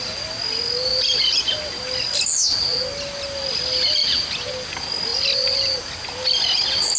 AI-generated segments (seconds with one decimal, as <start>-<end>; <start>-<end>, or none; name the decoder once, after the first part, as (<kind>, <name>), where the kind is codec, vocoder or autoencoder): none